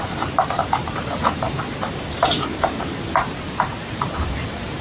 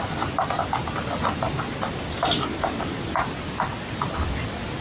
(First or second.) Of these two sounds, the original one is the second